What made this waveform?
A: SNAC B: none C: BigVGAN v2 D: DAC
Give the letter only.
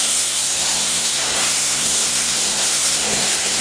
A